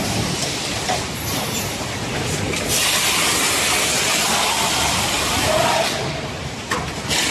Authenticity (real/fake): real